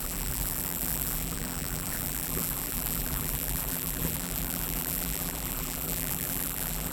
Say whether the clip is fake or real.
fake